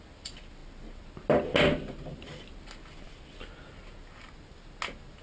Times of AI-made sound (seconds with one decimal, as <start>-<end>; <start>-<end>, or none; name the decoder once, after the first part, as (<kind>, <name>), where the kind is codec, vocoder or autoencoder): none